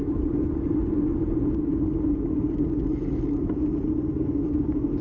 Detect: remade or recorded recorded